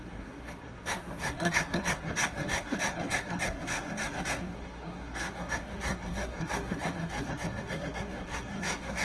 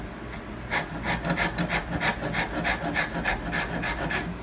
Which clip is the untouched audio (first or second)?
second